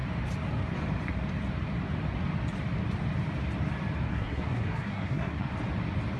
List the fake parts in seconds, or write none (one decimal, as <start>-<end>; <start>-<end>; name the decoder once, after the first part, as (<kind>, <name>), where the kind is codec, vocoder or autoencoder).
4.1-5.5 (codec, SNAC)